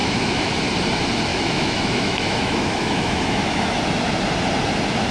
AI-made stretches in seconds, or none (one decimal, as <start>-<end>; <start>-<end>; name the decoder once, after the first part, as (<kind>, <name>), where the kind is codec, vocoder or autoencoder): 0.0-0.6 (autoencoder, DAC-VAE); 1.3-3.8

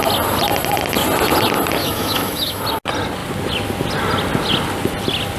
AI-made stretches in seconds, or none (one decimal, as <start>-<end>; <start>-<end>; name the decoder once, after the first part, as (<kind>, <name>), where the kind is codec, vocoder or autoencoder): 1.8-2.6 (autoencoder, DAC-VAE)